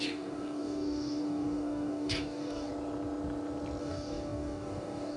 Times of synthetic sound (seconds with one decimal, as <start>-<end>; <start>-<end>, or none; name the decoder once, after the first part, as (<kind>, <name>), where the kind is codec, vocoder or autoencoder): 0.0-2.7 (codec, DAC); 3.8-5.2